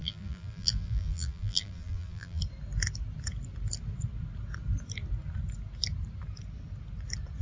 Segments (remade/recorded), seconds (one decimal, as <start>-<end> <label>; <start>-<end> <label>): 0.0-2.4 remade; 2.4-7.4 recorded